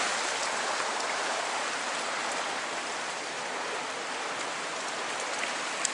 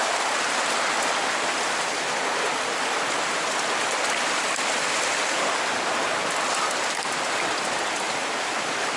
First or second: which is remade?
second